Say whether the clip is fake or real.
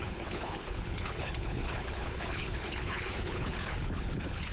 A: fake